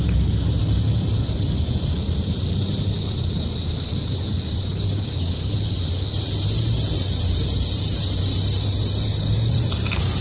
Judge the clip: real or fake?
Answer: fake